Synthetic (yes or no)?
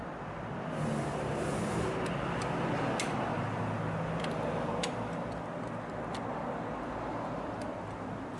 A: no